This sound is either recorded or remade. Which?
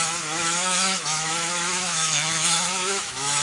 remade